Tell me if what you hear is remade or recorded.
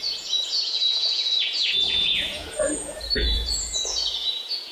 remade